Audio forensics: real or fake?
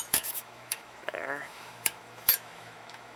fake